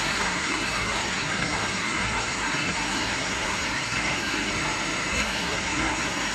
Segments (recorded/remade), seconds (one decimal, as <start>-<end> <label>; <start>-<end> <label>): 0.0-4.5 remade; 4.5-5.1 recorded; 5.1-6.3 remade